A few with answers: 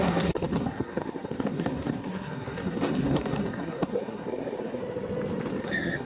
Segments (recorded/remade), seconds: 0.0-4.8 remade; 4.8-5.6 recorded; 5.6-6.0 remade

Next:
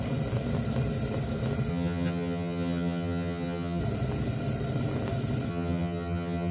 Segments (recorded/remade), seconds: 0.0-1.7 recorded; 1.7-3.8 remade; 3.8-5.5 recorded; 5.5-6.5 remade